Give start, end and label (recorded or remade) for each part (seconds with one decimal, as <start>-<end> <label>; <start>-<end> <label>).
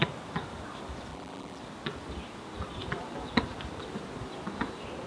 0.0-1.1 recorded; 1.1-1.6 remade; 1.6-5.1 recorded